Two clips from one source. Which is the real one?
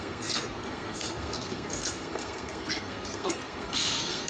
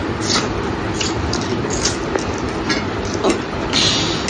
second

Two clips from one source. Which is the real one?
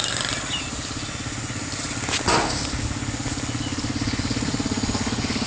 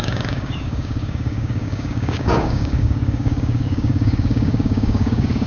first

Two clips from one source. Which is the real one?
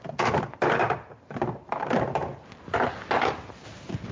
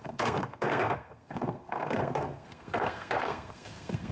first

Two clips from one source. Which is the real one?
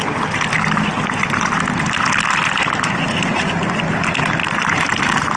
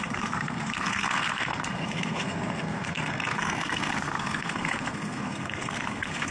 first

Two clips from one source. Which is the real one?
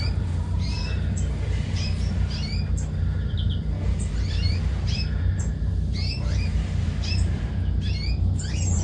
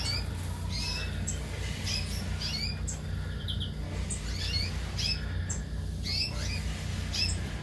second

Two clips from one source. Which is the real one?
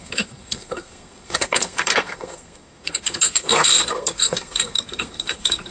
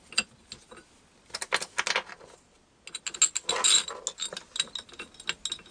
second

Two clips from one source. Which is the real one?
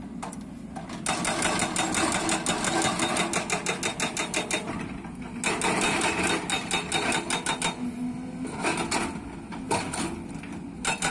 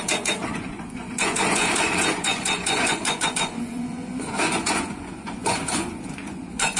first